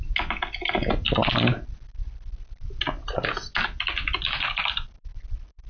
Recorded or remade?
recorded